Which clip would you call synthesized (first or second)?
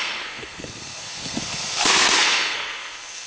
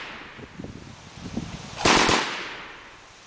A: first